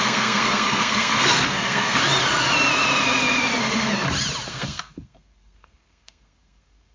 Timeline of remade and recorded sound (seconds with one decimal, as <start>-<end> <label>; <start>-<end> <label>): 0.0-2.0 remade; 2.0-4.5 recorded; 4.5-6.9 remade

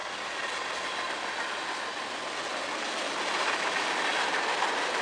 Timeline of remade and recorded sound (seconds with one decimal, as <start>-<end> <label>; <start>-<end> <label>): 0.0-5.0 recorded